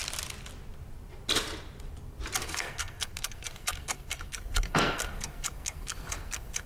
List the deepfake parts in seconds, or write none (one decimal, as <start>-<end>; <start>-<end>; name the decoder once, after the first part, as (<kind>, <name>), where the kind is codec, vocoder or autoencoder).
2.4-6.7 (codec, SNAC)